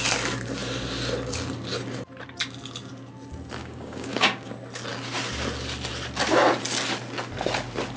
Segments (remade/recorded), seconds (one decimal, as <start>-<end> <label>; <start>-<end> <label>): 0.0-3.6 recorded; 3.6-4.5 remade; 4.5-8.0 recorded

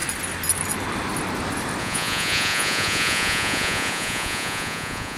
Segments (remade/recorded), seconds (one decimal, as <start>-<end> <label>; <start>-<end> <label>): 0.0-1.8 recorded; 1.8-5.2 remade